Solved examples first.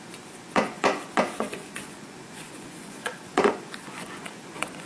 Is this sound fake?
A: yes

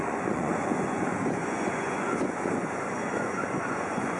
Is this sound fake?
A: yes